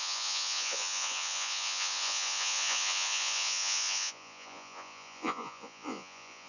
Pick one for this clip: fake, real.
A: fake